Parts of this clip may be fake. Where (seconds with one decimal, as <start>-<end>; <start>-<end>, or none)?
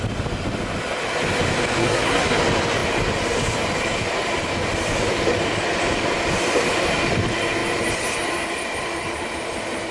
1.8-2.4